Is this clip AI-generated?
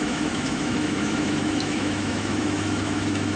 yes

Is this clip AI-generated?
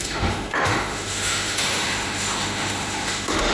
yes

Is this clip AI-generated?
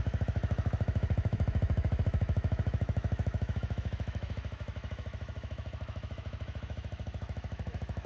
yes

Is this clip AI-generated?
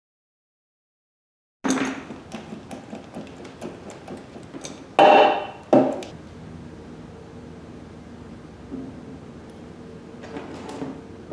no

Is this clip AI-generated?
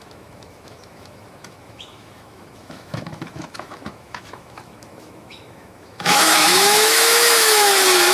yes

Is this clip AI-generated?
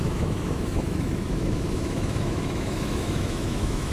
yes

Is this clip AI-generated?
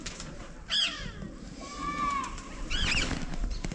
no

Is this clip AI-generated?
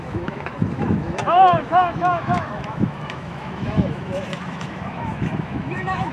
yes